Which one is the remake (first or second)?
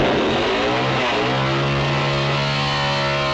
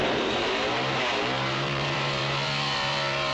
second